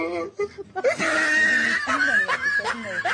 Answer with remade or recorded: recorded